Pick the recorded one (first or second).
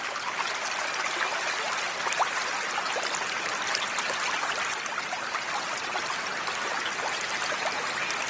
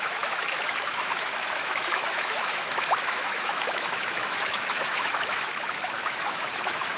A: first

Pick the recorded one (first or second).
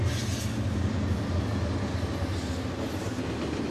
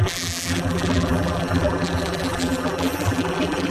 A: first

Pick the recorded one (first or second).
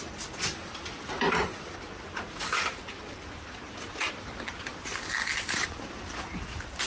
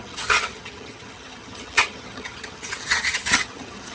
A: first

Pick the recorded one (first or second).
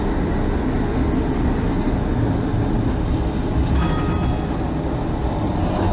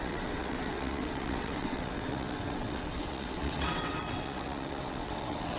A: first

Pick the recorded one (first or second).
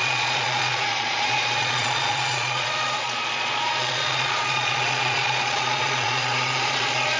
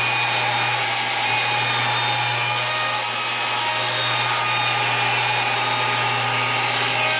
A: second